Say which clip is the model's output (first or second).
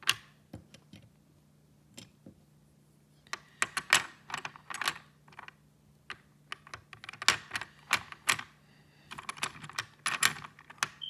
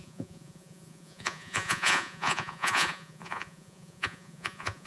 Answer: second